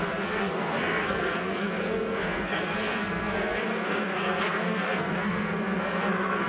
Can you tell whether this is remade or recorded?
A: remade